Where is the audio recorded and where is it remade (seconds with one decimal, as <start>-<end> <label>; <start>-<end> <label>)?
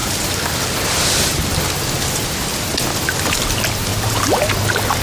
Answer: 0.0-0.6 remade; 0.6-5.0 recorded